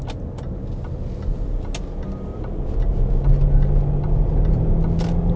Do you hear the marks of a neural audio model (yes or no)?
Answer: no